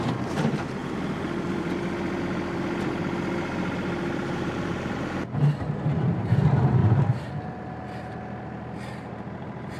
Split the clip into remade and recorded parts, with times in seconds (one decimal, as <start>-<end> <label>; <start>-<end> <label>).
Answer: 0.0-0.8 remade; 0.8-4.2 recorded; 4.2-9.8 remade